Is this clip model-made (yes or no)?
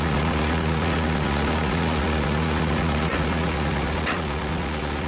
yes